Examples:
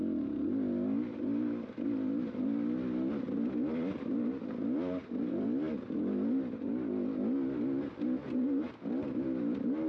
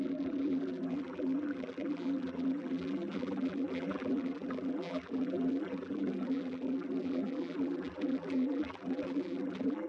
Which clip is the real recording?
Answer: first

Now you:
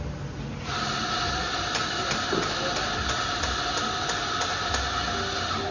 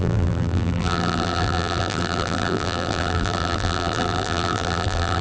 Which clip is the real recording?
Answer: first